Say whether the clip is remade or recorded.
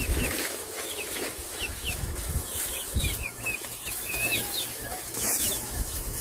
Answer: remade